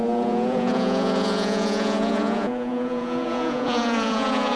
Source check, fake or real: fake